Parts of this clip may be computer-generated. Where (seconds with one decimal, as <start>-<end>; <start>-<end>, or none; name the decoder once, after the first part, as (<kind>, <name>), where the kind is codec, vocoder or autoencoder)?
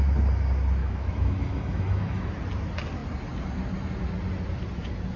0.8-2.3 (autoencoder, DAC-VAE)